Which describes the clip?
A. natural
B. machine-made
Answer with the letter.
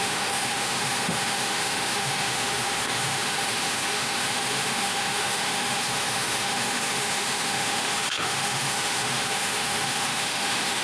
B